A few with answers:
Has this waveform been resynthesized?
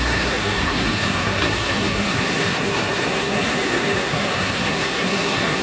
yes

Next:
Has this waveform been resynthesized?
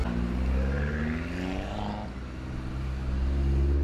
no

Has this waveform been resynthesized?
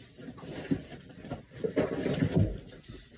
no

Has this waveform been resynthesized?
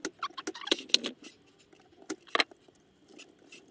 no